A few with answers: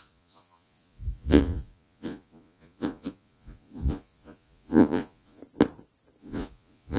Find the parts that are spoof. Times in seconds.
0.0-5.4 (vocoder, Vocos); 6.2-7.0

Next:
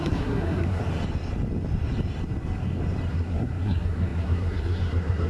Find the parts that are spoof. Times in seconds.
0.0-0.8 (codec, SNAC); 3.1-5.3

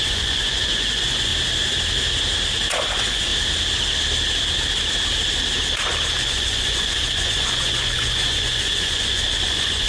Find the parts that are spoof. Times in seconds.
0.0-1.3 (vocoder, Vocos); 2.9-3.3; 6.2-9.9

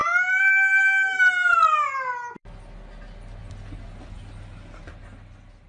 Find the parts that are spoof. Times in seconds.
none

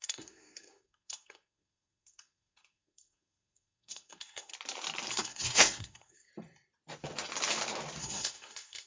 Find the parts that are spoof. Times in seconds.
0.0-4.5 (codec, SNAC); 5.1-6.3; 8.0-8.9